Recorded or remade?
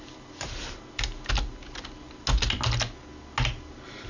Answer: recorded